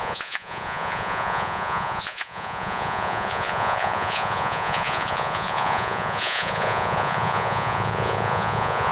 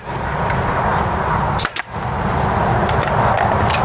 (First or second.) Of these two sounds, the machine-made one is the first